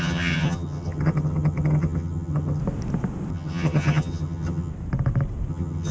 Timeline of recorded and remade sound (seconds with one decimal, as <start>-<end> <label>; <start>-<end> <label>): 0.0-2.6 remade; 2.6-3.3 recorded; 3.3-4.7 remade; 4.7-5.5 recorded; 5.5-5.9 remade